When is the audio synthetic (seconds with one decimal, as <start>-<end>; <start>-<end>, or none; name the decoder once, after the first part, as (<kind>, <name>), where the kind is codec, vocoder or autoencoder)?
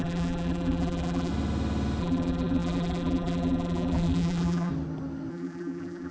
0.0-1.3 (vocoder, BigVGAN v2); 2.0-4.7; 5.3-6.1